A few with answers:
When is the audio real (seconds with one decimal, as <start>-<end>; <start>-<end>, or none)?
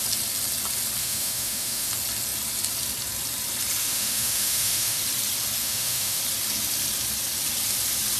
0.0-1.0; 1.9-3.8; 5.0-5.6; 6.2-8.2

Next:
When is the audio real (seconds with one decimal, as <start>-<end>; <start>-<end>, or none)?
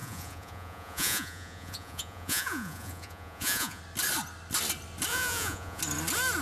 3.8-5.1; 5.8-6.4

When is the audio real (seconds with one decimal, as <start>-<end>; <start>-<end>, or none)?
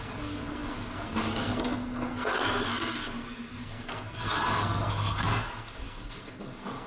none